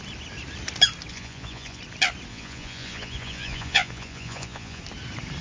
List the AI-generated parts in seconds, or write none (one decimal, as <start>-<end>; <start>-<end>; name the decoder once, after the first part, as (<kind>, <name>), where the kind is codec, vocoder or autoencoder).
1.1-1.8 (vocoder, Vocos); 2.3-4.8